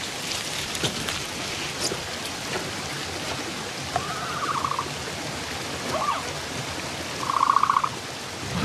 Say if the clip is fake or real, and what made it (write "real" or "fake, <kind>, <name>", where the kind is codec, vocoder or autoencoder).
real